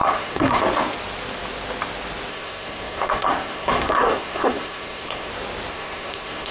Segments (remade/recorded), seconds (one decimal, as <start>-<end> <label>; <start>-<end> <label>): 0.0-0.6 remade; 0.6-2.3 recorded; 2.3-5.3 remade; 5.3-5.7 recorded; 5.7-6.5 remade